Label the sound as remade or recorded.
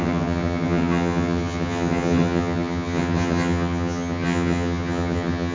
remade